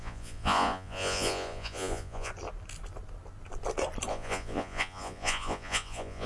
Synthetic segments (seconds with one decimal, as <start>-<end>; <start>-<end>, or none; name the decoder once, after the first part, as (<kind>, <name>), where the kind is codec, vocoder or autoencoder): 0.0-2.3 (vocoder, Vocos); 4.1-6.3